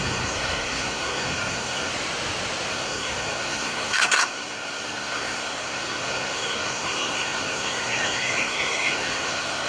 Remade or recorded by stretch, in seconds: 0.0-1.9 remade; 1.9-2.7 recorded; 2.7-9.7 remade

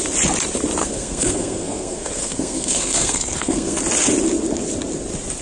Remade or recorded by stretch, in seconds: 0.0-0.8 recorded; 0.8-3.8 remade; 3.8-5.4 recorded

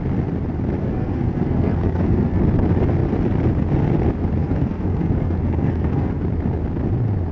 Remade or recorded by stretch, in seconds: 0.0-0.8 recorded; 0.8-2.4 remade; 2.4-4.4 recorded; 4.4-6.2 remade; 6.2-7.3 recorded

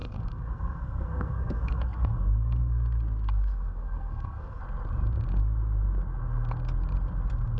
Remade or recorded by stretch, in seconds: 0.0-4.6 remade; 4.6-7.6 recorded

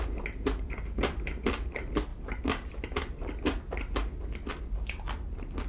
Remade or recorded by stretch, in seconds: 0.0-5.7 recorded

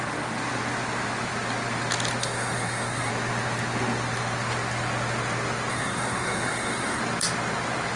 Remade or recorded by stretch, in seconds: 0.0-2.2 recorded; 2.2-3.1 remade; 3.1-5.7 recorded; 5.7-7.0 remade; 7.0-8.0 recorded

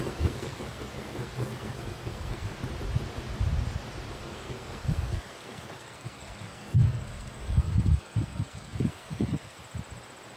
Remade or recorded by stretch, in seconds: 0.0-2.6 remade; 2.6-4.1 recorded; 4.1-9.6 remade; 9.6-10.4 recorded

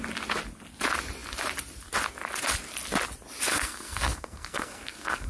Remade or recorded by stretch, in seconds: 0.0-3.5 recorded; 3.5-5.3 remade